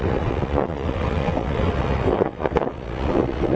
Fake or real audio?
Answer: fake